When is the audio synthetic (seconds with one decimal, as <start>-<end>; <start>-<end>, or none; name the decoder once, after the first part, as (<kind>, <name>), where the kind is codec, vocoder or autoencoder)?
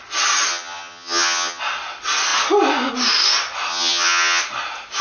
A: 0.5-1.6 (vocoder, HiFi-GAN); 3.7-4.4